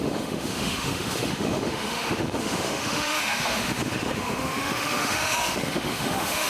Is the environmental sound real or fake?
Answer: fake